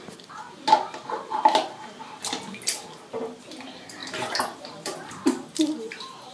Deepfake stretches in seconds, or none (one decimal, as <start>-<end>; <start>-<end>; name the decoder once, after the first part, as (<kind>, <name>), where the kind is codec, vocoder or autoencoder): 4.0-6.3 (vocoder, BigVGAN v2)